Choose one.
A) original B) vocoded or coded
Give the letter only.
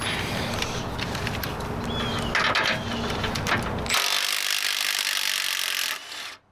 A